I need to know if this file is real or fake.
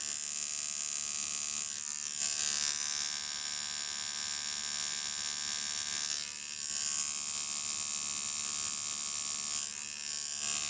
real